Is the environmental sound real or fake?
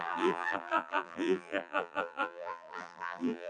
fake